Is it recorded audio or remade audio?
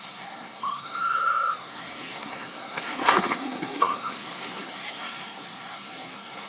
remade